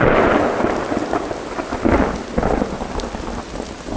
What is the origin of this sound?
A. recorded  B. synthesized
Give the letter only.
A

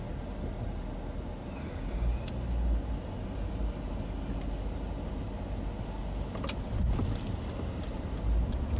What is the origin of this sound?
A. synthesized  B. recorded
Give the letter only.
B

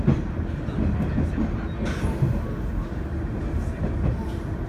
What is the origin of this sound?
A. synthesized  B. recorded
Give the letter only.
B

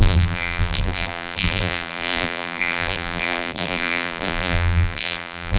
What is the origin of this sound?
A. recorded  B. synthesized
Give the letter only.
B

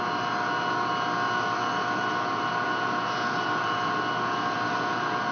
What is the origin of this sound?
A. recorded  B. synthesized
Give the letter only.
A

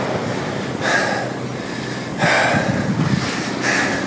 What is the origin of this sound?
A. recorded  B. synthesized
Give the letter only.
A